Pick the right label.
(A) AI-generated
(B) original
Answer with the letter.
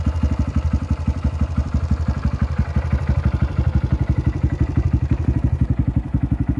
B